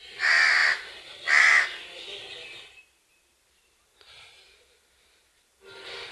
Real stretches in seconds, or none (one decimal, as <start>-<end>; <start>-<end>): 0.0-6.1